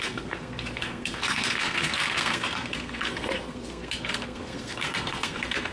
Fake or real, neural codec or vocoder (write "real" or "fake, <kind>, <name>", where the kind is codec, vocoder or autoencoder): fake, codec, SNAC